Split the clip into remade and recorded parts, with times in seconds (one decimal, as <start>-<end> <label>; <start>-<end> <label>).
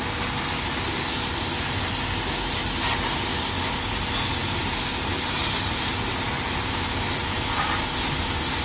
0.0-8.6 recorded